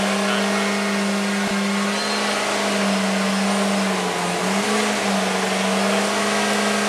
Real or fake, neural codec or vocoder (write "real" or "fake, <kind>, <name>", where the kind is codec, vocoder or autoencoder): real